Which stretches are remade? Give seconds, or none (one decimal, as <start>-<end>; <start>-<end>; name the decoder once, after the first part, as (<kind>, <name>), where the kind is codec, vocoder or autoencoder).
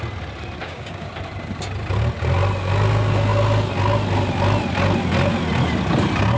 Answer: 0.6-1.1 (codec, DAC)